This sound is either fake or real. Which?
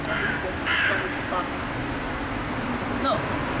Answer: fake